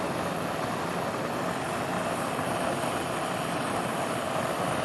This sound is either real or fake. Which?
fake